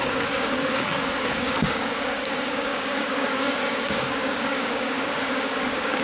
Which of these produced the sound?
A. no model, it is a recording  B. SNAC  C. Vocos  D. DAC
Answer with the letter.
D